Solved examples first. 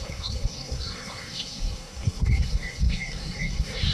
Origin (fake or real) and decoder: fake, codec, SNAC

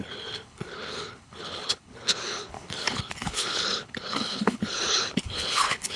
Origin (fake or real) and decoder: fake, codec, HILCodec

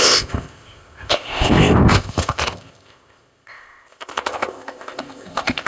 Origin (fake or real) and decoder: fake, codec, ZipCodec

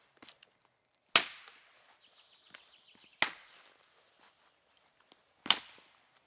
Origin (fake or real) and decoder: real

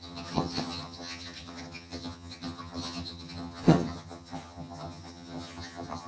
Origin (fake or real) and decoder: fake, vocoder, HiFi-GAN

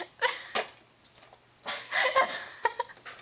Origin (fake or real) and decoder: real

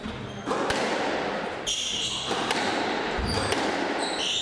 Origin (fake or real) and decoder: real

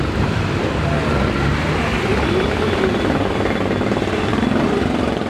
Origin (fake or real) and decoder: fake, vocoder, BigVGAN v2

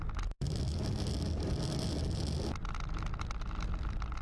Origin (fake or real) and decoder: real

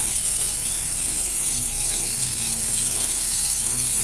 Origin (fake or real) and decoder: fake, codec, SNAC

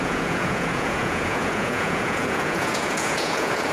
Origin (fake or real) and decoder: fake, vocoder, Vocos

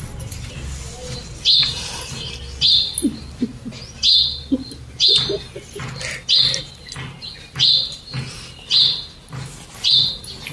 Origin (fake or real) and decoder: real